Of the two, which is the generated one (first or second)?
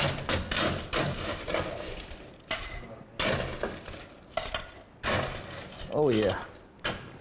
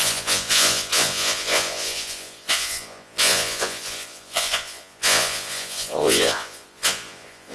second